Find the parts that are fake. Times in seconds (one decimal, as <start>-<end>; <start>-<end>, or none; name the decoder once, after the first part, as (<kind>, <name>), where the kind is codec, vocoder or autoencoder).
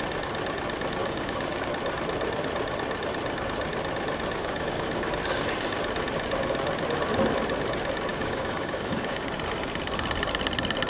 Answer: 1.0-1.7 (codec, DAC); 4.4-5.1; 8.1-9.3